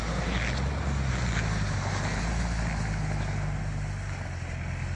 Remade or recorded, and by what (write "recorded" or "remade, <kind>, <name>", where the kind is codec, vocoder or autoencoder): recorded